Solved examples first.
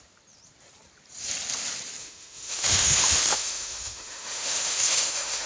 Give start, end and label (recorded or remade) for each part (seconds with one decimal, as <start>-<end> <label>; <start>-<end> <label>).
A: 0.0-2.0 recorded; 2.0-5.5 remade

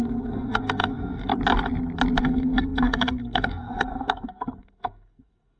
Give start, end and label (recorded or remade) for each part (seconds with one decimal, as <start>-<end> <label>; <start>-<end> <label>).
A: 0.0-1.3 remade; 1.3-2.2 recorded; 2.2-5.6 remade

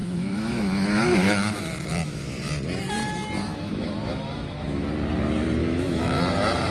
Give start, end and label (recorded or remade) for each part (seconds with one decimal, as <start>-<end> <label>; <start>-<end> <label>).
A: 0.0-2.5 remade; 2.5-3.5 recorded; 3.5-4.9 remade; 4.9-5.6 recorded; 5.6-6.2 remade; 6.2-6.7 recorded